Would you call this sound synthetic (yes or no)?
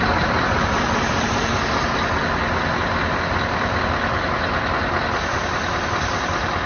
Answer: no